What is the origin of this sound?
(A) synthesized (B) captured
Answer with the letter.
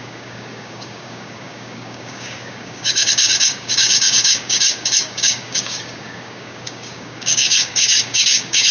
A